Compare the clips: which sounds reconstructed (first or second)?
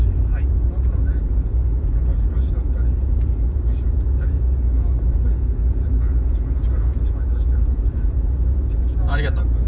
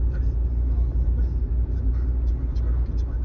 first